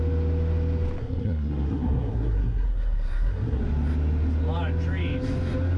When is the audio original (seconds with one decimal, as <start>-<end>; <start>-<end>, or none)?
0.0-1.0; 3.6-5.8